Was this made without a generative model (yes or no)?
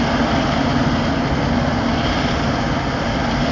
yes